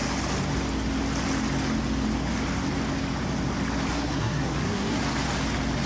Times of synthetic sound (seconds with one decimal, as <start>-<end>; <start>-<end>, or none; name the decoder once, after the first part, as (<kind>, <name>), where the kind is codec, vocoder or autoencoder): 3.9-5.0 (codec, SNAC)